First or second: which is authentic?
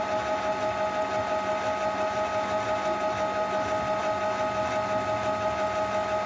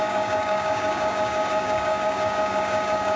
first